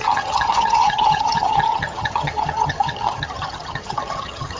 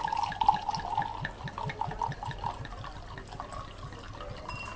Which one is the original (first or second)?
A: second